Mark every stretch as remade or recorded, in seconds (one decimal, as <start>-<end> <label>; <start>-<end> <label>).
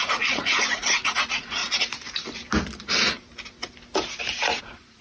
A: 0.0-1.6 remade; 1.6-4.6 recorded; 4.6-5.0 remade